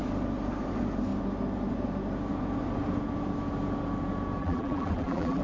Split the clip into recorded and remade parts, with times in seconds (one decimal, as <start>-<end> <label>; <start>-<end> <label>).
0.0-4.4 recorded; 4.4-5.4 remade